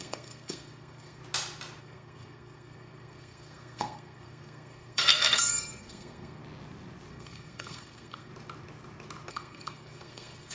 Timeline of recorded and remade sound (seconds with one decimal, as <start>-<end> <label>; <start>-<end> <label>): 0.0-1.2 remade; 1.2-1.8 recorded; 1.8-6.4 remade; 6.4-7.1 recorded; 7.1-8.3 remade; 8.3-9.3 recorded; 9.3-10.5 remade

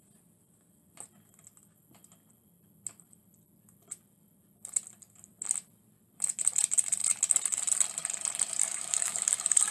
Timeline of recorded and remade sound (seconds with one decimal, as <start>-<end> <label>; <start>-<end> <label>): 0.0-8.6 recorded; 8.6-9.7 remade

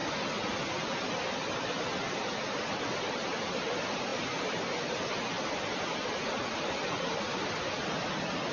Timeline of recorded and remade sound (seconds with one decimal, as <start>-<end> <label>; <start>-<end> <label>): 0.0-8.5 recorded

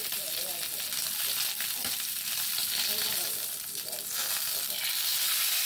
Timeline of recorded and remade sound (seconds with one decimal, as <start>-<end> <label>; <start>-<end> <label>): 0.0-5.7 recorded

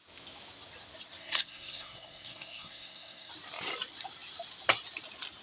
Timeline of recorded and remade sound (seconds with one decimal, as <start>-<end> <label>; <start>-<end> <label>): 0.0-1.2 recorded; 1.2-3.3 remade; 3.3-5.4 recorded

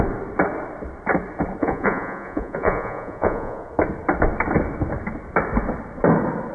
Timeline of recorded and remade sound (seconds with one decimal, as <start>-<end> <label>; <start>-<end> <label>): 0.0-1.6 recorded; 1.6-3.7 remade; 3.7-6.5 recorded

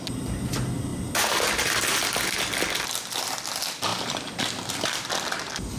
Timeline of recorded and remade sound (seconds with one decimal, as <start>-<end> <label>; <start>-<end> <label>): 0.0-0.9 recorded; 0.9-3.4 remade; 3.4-3.9 recorded; 3.9-5.1 remade; 5.1-5.8 recorded